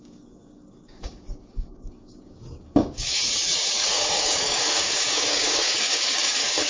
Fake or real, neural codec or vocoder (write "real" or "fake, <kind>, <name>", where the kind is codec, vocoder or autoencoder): fake, codec, DAC